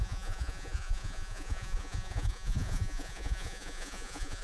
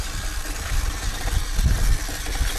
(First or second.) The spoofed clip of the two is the first